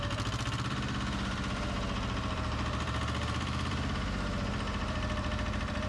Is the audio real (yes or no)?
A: no